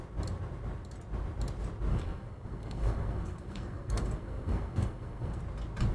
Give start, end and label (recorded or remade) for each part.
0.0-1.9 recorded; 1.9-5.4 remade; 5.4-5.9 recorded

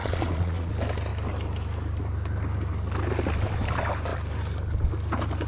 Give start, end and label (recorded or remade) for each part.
0.0-0.7 remade; 0.7-5.5 recorded

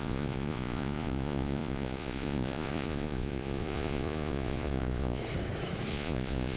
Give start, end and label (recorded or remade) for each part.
0.0-5.2 remade; 5.2-5.9 recorded; 5.9-6.6 remade

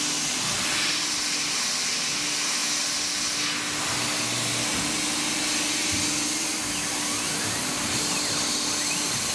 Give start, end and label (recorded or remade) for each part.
0.0-9.3 recorded

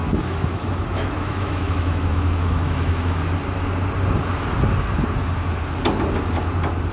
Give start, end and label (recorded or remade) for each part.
0.0-3.2 remade; 3.2-6.9 recorded